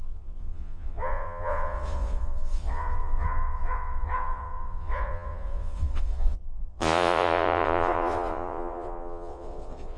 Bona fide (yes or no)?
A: no